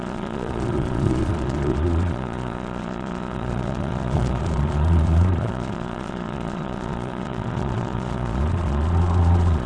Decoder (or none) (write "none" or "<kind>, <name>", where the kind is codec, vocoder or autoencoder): vocoder, Vocos